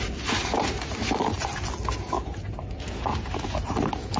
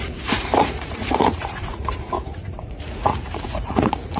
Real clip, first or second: first